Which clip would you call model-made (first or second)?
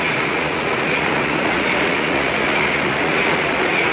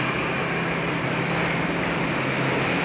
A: first